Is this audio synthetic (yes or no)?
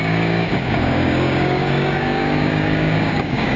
yes